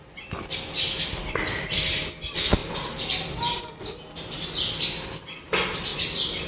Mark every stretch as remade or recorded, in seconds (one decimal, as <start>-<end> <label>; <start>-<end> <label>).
0.0-6.5 recorded

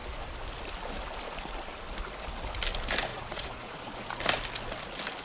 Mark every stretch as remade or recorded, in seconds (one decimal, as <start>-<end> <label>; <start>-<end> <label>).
0.0-3.1 recorded; 3.1-4.1 remade; 4.1-5.2 recorded

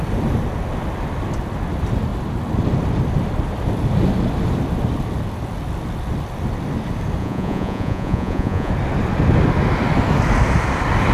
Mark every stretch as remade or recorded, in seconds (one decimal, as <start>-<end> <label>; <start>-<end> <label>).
0.0-7.2 recorded; 7.2-8.7 remade; 8.7-11.1 recorded

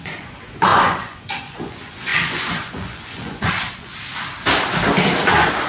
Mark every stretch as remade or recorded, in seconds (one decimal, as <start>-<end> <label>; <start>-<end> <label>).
0.0-3.9 remade; 3.9-5.2 recorded; 5.2-5.7 remade

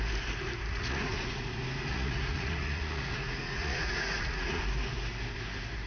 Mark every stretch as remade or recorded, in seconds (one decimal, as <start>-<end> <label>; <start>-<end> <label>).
0.0-0.7 recorded; 0.7-1.4 remade; 1.4-1.9 recorded; 1.9-4.6 remade; 4.6-5.9 recorded

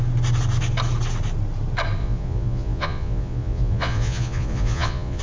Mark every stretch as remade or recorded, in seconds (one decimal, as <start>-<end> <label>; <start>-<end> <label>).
0.0-2.0 recorded; 2.0-5.2 remade